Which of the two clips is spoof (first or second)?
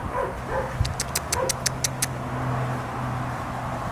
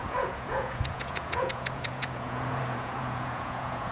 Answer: second